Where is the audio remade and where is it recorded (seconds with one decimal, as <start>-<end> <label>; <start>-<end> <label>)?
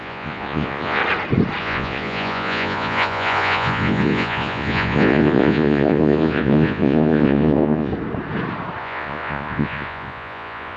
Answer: 0.0-1.0 remade; 1.0-1.6 recorded; 1.6-7.9 remade; 7.9-8.8 recorded; 8.8-10.8 remade